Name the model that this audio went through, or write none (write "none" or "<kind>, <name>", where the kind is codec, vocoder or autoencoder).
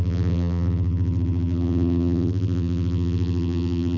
vocoder, BigVGAN v2